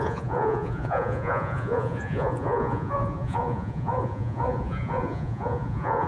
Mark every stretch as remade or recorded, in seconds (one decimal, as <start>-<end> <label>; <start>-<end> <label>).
0.0-6.1 remade